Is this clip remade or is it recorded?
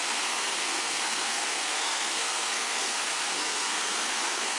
remade